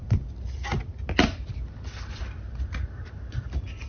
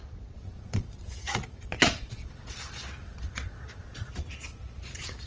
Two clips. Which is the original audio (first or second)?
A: first